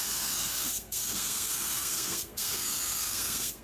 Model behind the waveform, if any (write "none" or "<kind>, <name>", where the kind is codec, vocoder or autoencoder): codec, SNAC